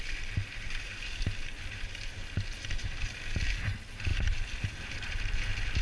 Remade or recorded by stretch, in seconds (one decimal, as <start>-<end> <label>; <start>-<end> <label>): 0.0-4.1 recorded; 4.1-5.1 remade; 5.1-5.8 recorded